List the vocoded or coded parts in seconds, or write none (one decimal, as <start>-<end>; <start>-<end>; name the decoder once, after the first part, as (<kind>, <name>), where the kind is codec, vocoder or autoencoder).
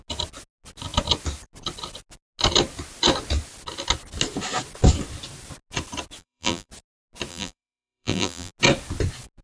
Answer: 6.2-6.7 (vocoder, BigVGAN v2); 7.3-8.5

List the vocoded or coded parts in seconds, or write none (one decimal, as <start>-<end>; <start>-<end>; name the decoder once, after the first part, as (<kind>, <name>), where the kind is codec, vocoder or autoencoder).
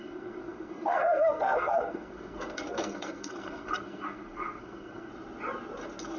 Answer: 0.0-5.1 (codec, SNAC)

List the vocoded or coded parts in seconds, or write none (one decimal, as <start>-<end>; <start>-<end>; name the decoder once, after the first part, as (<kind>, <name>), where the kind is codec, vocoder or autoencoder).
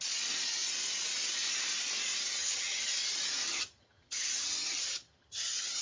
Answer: 2.4-2.9 (vocoder, HiFi-GAN); 3.4-5.8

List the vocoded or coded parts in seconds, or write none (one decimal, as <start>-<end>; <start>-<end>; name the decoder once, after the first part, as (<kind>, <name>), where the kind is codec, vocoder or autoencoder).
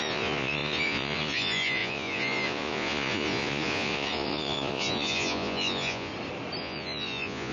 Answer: 0.0-6.1 (vocoder, Vocos); 6.6-7.5